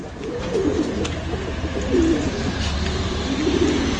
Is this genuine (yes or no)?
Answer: no